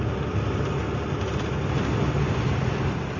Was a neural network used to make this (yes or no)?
no